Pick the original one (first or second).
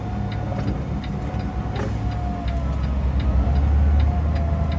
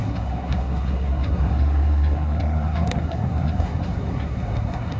first